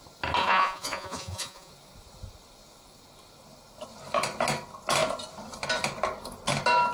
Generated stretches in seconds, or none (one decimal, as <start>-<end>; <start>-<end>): 0.4-1.7